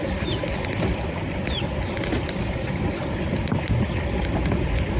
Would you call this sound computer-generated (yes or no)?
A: no